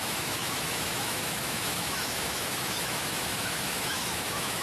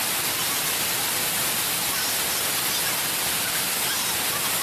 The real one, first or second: second